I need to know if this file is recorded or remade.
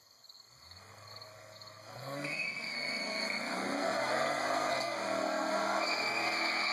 remade